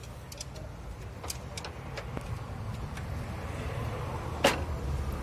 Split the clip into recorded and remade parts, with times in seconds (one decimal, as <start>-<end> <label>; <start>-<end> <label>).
0.0-5.2 recorded